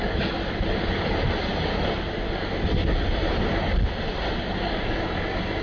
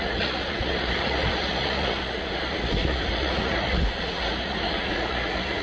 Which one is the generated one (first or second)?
second